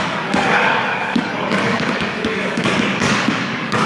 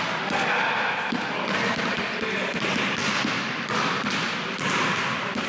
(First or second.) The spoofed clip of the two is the first